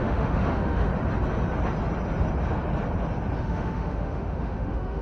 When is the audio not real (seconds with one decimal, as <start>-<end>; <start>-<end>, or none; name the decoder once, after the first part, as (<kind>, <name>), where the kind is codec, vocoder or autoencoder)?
0.0-0.9 (autoencoder, DAC-VAE); 3.4-5.0

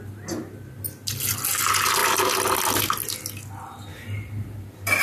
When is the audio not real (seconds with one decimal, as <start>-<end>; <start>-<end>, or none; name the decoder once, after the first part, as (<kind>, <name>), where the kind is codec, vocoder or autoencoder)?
3.9-5.0 (vocoder, BigVGAN v2)